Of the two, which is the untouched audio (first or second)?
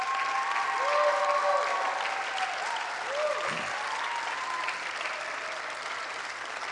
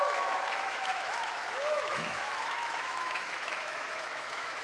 first